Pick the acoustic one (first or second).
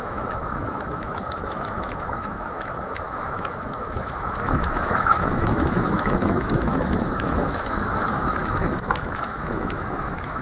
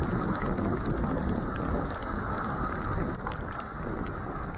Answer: second